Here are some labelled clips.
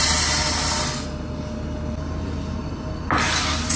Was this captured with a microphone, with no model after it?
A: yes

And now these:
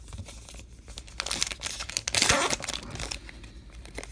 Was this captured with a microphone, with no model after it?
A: yes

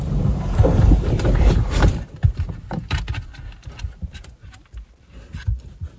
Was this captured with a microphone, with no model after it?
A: yes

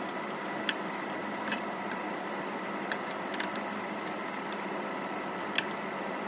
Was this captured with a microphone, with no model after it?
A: yes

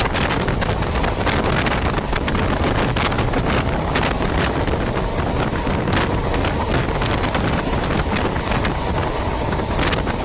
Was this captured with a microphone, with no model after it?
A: yes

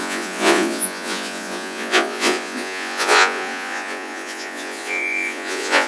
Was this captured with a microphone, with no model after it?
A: no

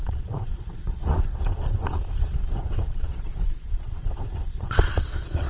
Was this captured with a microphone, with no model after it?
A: no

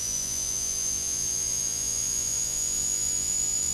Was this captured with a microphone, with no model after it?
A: no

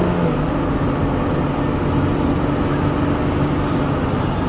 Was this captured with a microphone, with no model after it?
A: yes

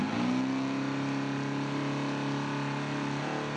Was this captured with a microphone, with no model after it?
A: yes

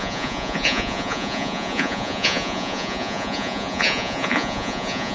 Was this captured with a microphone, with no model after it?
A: no